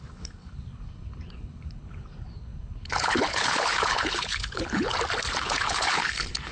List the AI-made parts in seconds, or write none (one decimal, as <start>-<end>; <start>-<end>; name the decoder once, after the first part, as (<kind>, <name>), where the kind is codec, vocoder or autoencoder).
0.0-4.9 (codec, HILCodec); 5.4-6.5

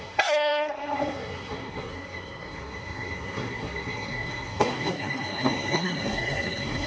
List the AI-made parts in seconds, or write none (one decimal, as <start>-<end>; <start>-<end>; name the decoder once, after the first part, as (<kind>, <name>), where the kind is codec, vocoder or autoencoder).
0.0-6.9 (codec, SNAC)

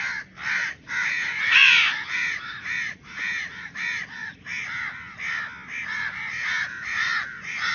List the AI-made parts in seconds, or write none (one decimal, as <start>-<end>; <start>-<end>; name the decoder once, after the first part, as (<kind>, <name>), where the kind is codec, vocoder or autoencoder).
0.6-5.2 (vocoder, Vocos); 5.8-7.7

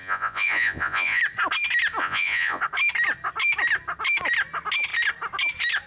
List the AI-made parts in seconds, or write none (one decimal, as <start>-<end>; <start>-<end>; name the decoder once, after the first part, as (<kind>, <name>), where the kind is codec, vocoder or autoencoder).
0.0-1.2 (vocoder, Vocos); 2.0-2.6

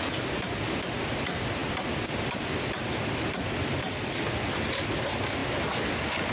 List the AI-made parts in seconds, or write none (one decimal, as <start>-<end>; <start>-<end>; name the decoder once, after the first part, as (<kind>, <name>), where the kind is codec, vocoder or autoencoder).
none

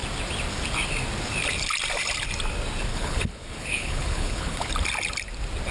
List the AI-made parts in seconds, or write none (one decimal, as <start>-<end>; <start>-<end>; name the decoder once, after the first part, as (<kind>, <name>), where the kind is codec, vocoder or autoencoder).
2.9-4.7 (codec, HILCodec)

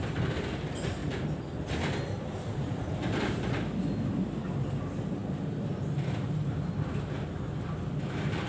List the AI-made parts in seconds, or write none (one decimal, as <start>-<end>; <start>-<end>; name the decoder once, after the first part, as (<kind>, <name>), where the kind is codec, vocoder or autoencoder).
1.0-3.5 (vocoder, BigVGAN v2)